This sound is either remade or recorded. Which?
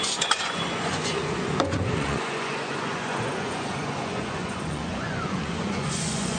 remade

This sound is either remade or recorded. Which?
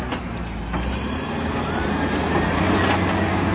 recorded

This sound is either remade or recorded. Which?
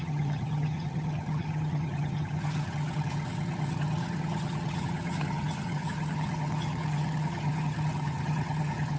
remade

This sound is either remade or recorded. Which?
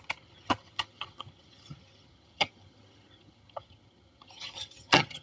remade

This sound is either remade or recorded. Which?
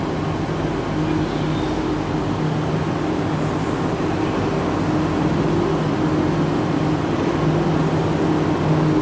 recorded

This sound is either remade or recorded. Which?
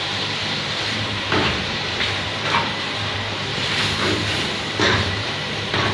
remade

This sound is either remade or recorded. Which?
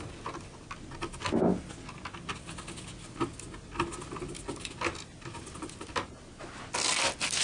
recorded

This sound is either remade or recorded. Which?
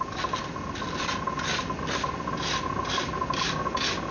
recorded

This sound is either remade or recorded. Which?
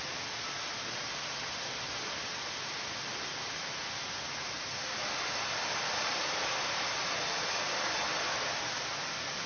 recorded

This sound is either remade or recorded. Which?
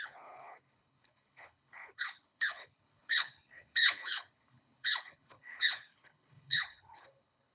remade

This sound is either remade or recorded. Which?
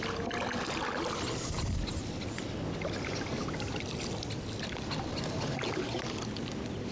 recorded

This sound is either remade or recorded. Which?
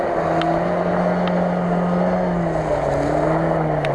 recorded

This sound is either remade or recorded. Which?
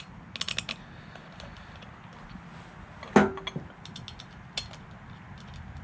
recorded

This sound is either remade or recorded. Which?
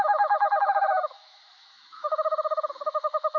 remade